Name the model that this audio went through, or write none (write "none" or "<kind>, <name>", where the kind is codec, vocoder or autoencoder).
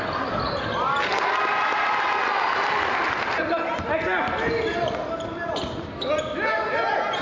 none